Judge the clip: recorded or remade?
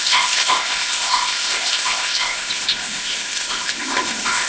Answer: remade